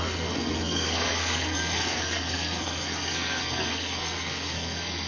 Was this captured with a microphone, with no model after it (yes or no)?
no